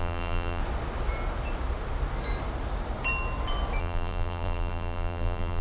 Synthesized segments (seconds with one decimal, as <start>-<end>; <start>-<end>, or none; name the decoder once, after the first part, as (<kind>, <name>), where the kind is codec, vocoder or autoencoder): 0.0-0.6 (vocoder, BigVGAN v2); 3.8-5.6